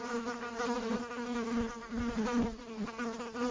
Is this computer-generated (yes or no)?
no